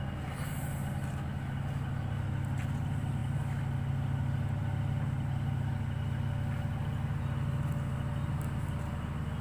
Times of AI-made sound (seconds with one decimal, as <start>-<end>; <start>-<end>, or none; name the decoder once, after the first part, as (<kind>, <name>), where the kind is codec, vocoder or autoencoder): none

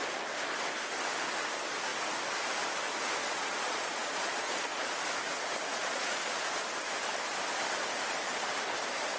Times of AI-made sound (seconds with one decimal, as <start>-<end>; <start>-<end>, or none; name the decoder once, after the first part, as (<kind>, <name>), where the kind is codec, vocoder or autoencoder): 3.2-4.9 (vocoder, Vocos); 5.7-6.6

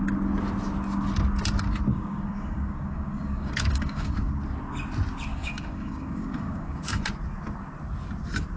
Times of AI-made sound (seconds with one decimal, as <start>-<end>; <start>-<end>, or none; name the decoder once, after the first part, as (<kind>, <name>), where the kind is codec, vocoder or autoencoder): 1.9-4.3 (codec, DAC); 5.3-7.0

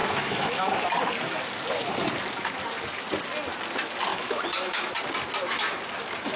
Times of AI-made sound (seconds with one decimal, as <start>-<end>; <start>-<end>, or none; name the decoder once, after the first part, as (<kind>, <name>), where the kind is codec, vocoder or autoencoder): 0.0-0.7 (autoencoder, DAC-VAE); 4.1-4.9

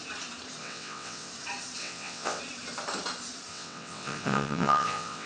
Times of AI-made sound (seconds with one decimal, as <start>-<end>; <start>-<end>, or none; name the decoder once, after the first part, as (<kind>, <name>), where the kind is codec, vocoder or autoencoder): 0.6-1.3 (vocoder, WaveNeXt); 1.8-2.4; 3.5-5.3

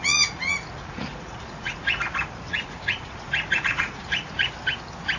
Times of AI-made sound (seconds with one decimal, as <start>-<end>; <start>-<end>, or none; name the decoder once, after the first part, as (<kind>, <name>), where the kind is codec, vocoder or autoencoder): 0.0-2.0 (vocoder, Vocos); 2.5-4.5

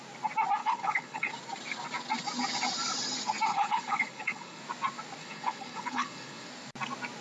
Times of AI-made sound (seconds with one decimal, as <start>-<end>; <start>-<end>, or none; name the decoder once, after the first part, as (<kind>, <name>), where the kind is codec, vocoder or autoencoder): 0.6-1.3 (codec, HILCodec); 3.5-4.6; 5.2-6.5